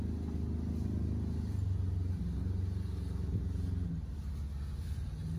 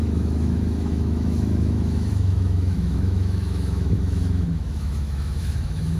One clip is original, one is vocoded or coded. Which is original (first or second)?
first